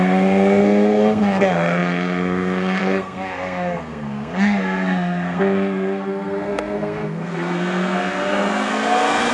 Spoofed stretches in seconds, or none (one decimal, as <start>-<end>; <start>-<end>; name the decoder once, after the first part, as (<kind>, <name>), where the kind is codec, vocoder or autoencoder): 0.0-9.3 (codec, SNAC)